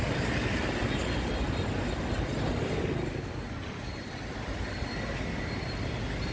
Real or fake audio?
real